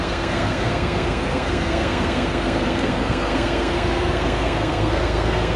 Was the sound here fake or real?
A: fake